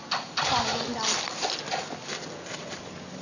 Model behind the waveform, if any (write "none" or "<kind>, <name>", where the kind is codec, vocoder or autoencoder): none